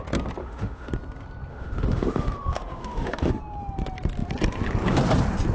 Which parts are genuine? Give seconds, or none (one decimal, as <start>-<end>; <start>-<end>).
0.0-0.4; 0.9-1.5; 3.3-5.5